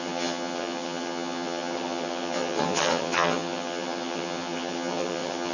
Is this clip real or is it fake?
fake